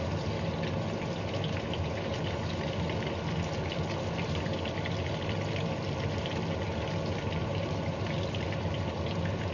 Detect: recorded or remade recorded